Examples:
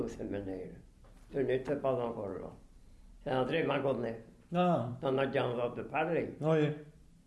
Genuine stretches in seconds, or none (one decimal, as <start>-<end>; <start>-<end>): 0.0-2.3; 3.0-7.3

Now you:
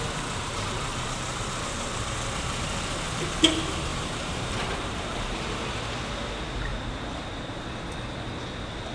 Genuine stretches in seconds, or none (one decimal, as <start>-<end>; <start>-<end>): 0.0-0.9; 1.5-3.9; 5.2-6.7; 7.6-8.9

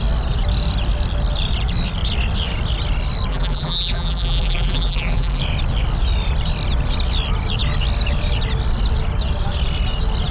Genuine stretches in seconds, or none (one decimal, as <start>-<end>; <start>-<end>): 0.0-3.3; 5.4-10.3

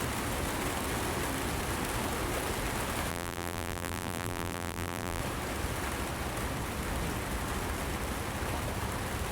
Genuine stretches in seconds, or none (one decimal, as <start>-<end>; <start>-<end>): 0.0-3.1; 5.2-9.3